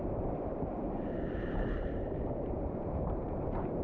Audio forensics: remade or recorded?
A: remade